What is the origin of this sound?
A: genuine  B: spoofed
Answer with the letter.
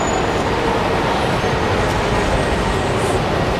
A